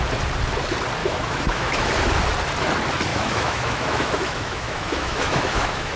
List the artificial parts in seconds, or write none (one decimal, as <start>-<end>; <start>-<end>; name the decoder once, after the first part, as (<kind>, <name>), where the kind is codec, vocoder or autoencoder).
1.0-1.9 (autoencoder, DAC-VAE); 3.1-6.0